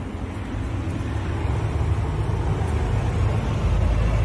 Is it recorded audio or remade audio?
recorded